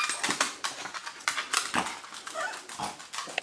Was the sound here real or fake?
real